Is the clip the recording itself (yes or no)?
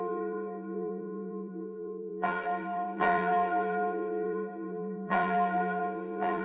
no